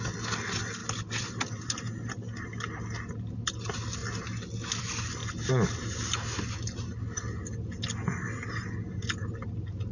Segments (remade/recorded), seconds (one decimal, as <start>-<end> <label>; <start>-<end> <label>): 0.0-0.8 recorded; 0.8-2.1 remade; 2.1-9.9 recorded